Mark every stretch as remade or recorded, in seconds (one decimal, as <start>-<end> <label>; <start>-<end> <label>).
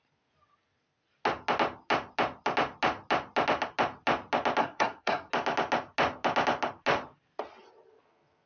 0.0-4.6 recorded; 4.6-5.3 remade; 5.3-8.5 recorded